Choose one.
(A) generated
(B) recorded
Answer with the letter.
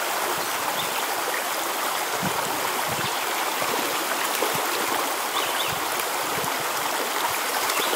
B